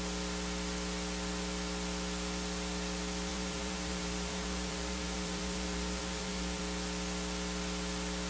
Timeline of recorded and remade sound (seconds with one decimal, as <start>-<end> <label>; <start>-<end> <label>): 0.0-3.3 recorded; 3.3-6.6 remade; 6.6-8.3 recorded